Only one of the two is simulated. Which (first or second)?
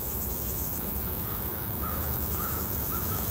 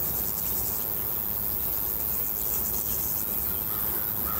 first